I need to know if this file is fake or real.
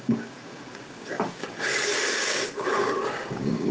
fake